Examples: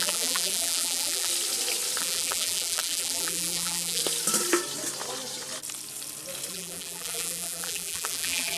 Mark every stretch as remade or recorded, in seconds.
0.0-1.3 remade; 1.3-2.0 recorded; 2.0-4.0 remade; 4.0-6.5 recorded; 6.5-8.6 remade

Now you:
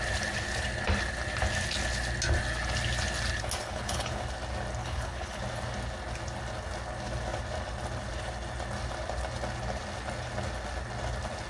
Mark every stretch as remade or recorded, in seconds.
0.0-3.6 recorded; 3.6-4.2 remade; 4.2-4.8 recorded; 4.8-5.4 remade; 5.4-11.5 recorded

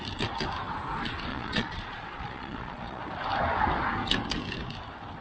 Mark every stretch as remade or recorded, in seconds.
0.0-1.3 recorded; 1.3-3.0 remade; 3.0-5.2 recorded